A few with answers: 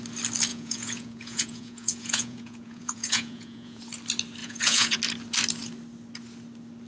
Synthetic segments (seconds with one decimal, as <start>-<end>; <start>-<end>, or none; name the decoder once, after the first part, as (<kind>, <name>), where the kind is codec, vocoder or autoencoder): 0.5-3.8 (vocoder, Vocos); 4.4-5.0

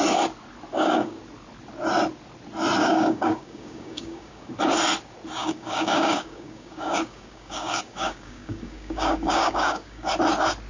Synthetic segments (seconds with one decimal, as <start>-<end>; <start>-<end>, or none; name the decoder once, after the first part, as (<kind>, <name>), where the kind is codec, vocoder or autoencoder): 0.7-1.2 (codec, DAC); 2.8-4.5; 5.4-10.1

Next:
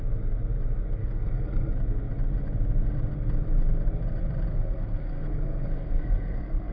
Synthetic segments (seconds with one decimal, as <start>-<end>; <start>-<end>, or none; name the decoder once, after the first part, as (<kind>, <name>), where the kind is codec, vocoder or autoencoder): 1.0-1.7 (codec, SNAC); 4.5-6.7

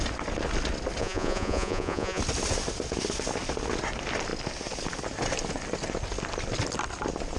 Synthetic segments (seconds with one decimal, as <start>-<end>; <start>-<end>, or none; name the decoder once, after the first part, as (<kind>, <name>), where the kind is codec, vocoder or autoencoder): 1.0-2.2 (vocoder, Vocos)

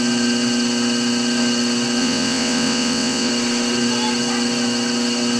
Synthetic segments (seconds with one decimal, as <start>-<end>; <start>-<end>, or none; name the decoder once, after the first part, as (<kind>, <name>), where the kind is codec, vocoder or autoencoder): 2.0-3.3 (vocoder, WaveNeXt)